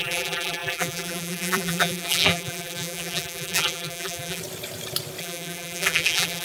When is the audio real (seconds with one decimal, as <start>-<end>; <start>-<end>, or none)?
4.4-5.2